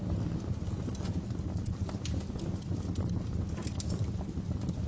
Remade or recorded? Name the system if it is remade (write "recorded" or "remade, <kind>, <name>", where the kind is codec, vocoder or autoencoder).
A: recorded